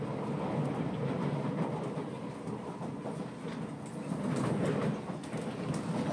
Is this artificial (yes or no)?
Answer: no